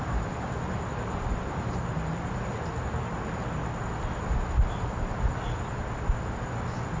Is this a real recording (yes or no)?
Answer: yes